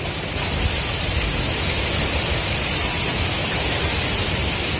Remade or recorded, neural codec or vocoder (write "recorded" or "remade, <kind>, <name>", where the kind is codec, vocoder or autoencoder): recorded